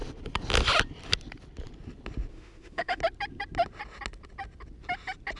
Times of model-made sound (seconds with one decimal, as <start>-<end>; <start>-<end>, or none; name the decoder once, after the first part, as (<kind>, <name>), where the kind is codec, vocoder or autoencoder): 2.3-3.0 (autoencoder, DAC-VAE)